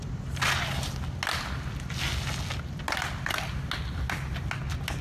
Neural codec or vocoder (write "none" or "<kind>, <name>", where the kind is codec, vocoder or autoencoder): none